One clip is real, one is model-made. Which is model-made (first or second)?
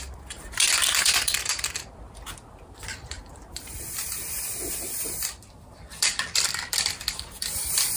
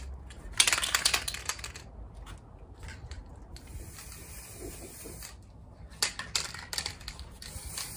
first